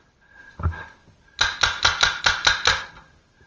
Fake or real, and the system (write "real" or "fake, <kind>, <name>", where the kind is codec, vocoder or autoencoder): real